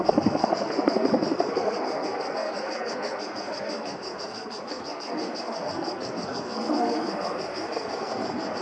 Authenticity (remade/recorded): remade